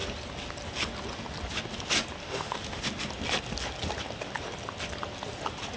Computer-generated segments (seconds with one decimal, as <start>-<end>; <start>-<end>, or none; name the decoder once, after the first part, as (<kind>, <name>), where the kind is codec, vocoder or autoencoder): 2.2-2.8 (autoencoder, DAC-VAE)